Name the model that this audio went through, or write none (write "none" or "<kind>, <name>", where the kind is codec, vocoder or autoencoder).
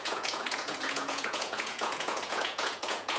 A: vocoder, Vocos